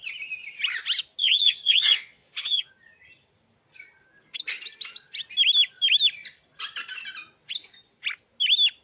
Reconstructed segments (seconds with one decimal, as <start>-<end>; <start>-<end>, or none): 1.2-2.7